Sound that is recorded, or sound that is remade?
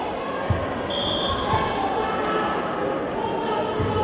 recorded